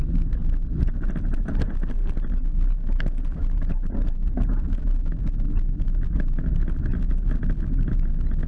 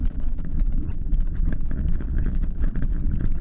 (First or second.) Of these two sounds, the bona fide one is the first